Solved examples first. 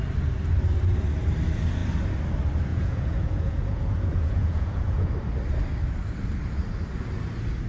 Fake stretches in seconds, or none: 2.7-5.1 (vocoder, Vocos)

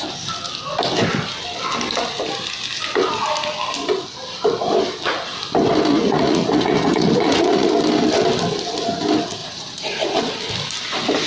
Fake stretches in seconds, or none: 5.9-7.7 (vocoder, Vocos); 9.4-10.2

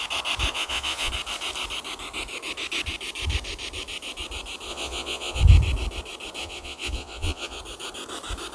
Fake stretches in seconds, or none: 0.5-1.1 (vocoder, Vocos); 4.7-5.4; 6.4-7.6

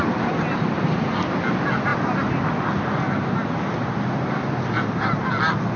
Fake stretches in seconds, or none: none

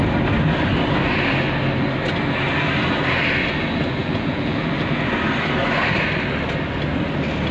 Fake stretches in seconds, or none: 4.0-4.7 (vocoder, Vocos)

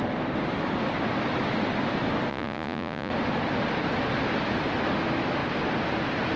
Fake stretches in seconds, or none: 2.3-3.1 (vocoder, Vocos)